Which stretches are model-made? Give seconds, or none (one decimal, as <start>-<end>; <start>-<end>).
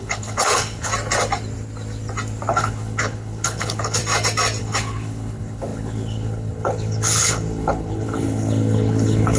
0.0-0.9; 2.5-4.0; 4.6-9.4